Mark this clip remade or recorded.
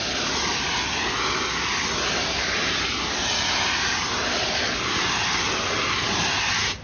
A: recorded